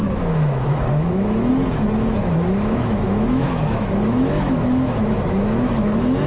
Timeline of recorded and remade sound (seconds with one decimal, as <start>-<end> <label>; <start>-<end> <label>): 0.0-1.5 remade; 1.5-2.2 recorded; 2.2-6.3 remade